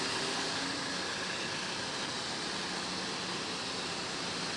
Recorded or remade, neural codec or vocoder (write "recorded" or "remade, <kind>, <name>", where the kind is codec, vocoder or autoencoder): recorded